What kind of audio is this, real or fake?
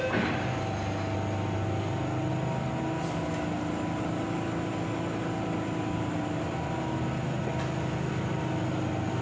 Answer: real